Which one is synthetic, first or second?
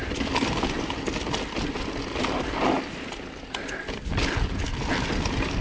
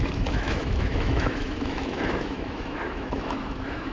second